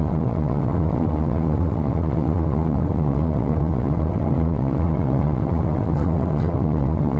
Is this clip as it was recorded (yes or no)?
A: no